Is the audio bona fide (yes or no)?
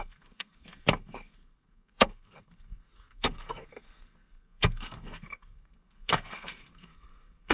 no